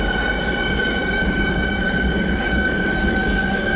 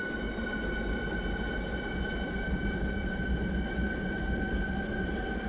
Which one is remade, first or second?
first